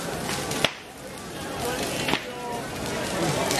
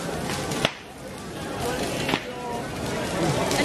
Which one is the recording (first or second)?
first